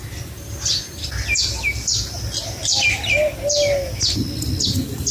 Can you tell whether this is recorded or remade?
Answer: recorded